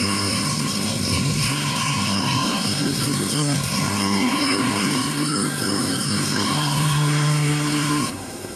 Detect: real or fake fake